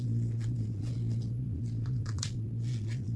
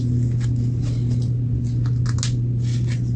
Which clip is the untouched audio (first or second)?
second